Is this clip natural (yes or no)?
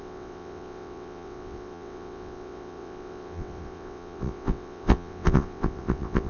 no